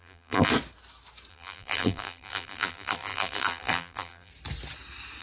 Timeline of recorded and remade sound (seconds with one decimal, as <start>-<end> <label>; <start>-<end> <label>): 0.0-0.5 remade; 0.5-1.3 recorded; 1.3-4.3 remade; 4.3-5.2 recorded